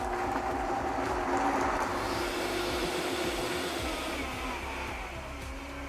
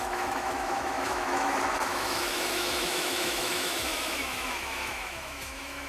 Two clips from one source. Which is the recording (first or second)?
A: first